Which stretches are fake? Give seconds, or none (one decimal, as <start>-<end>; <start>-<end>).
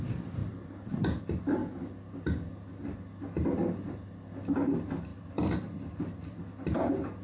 0.4-1.2; 5.1-6.4